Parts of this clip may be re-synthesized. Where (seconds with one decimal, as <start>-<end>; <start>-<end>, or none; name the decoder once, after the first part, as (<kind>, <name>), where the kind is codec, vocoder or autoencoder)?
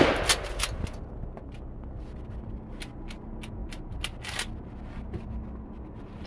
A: none